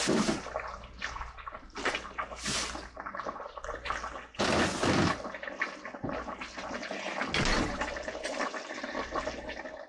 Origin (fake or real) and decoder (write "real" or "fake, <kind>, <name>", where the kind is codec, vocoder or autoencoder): real